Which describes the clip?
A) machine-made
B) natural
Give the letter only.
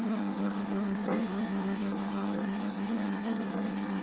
A